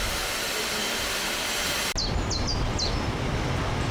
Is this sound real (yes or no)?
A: yes